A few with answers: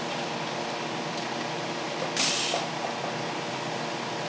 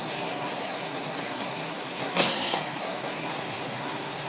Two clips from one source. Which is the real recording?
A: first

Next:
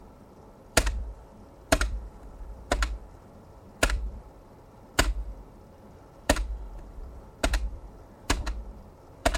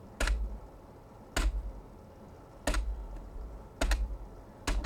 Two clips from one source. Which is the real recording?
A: second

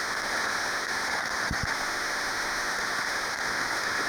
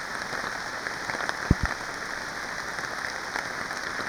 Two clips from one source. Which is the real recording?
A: second